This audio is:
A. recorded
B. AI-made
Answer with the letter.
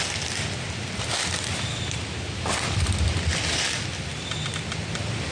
A